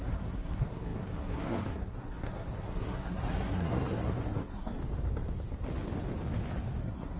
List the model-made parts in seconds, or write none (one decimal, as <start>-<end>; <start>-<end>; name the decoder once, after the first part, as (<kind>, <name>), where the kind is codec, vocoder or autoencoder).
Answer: 0.0-4.8 (codec, SNAC); 6.8-7.2